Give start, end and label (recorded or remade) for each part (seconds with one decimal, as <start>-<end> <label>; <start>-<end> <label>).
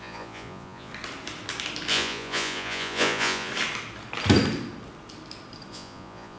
0.0-0.9 remade; 0.9-1.9 recorded; 1.9-3.5 remade; 3.5-5.7 recorded; 5.7-6.4 remade